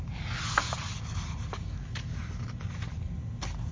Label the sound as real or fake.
real